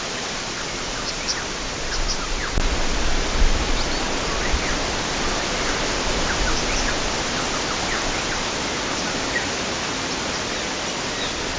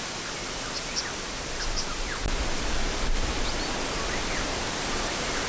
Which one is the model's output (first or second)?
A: first